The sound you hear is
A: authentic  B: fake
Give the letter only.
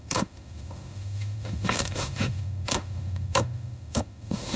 B